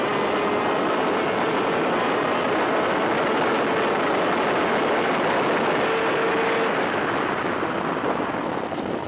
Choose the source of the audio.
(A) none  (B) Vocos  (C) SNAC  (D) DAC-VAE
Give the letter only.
A